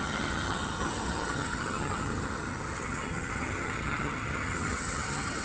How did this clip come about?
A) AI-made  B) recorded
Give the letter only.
A